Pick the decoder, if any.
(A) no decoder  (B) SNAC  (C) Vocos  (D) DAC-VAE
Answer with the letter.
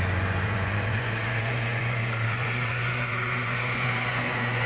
C